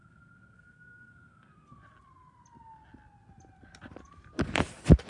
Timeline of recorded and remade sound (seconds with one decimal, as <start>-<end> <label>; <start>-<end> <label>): 0.0-1.8 remade; 1.8-5.1 recorded